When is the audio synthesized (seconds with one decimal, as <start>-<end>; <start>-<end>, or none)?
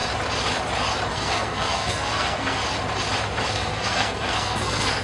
1.1-2.6; 3.4-5.0